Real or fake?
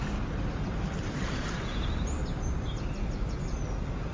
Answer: real